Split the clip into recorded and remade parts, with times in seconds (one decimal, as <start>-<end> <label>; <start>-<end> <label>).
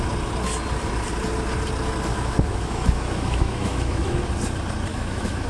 0.0-2.1 recorded; 2.1-4.2 remade; 4.2-4.9 recorded; 4.9-5.5 remade